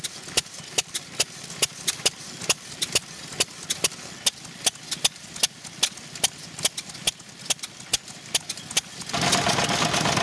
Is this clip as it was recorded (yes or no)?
yes